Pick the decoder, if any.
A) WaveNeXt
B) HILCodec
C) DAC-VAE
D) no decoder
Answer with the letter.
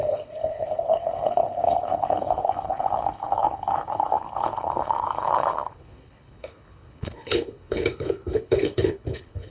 B